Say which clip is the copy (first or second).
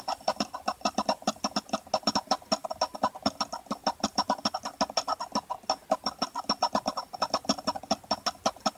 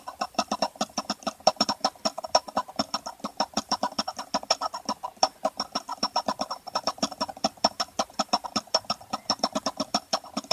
second